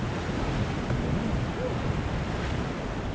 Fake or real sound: real